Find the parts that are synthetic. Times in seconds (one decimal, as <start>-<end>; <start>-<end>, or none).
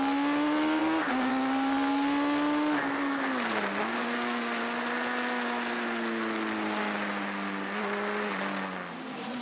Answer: 0.8-1.3; 3.9-4.6